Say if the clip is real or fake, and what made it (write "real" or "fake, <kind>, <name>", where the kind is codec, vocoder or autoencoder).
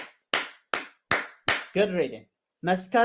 real